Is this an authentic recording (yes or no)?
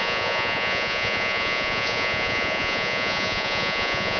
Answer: no